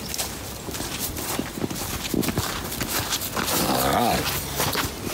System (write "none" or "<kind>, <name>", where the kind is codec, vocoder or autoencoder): none